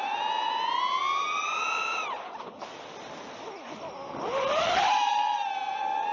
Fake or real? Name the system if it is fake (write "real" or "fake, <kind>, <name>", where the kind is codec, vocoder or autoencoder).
real